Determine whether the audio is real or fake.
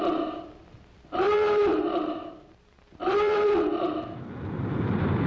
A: fake